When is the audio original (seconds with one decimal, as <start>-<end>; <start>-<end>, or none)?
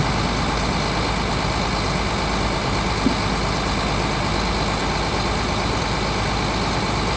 0.0-7.2